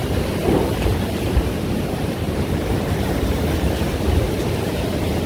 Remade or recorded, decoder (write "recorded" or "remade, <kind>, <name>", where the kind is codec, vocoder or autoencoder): remade, vocoder, BigVGAN v2